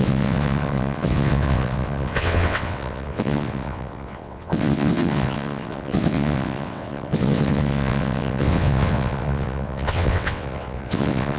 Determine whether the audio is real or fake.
fake